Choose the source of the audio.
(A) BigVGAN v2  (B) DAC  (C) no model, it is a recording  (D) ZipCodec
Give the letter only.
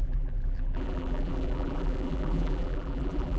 A